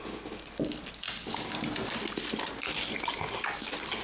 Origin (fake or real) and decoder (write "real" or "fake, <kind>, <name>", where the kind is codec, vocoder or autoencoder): real